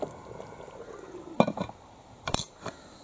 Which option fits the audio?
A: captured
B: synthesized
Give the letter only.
A